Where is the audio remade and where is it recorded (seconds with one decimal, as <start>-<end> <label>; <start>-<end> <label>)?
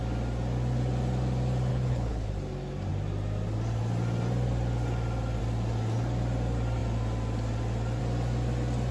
0.0-1.7 recorded; 1.7-2.3 remade; 2.3-8.9 recorded